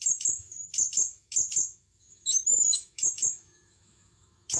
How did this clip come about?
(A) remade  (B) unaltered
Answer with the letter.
A